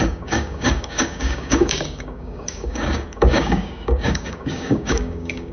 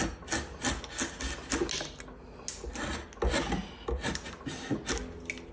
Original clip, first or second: second